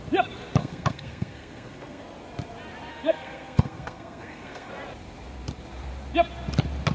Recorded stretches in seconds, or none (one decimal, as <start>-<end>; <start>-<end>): 0.0-0.6; 2.0-2.9; 4.7-6.9